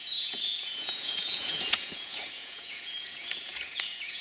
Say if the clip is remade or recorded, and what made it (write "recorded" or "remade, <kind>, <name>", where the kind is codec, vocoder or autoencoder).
remade, vocoder, Vocos